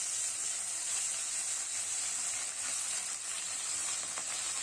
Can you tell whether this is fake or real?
real